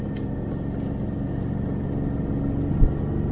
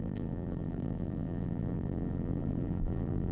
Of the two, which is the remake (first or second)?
second